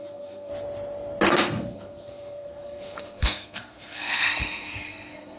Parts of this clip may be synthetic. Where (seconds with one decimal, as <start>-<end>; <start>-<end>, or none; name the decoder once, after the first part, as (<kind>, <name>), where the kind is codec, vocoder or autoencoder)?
0.0-0.5 (codec, SNAC); 1.3-5.4